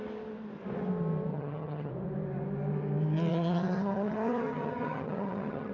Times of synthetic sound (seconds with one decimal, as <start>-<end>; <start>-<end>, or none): 1.3-1.9; 3.3-5.7